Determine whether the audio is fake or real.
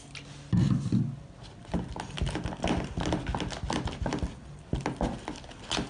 real